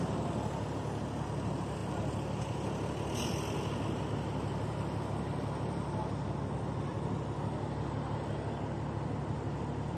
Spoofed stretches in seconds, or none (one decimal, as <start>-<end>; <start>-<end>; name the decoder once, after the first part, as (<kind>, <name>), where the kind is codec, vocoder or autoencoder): none